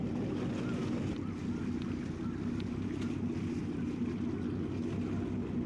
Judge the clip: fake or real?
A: real